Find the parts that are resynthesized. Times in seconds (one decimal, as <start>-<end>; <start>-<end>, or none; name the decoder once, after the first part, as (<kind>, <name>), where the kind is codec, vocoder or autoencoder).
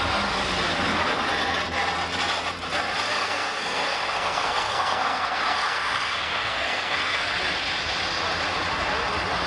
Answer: 3.1-7.3 (codec, SNAC)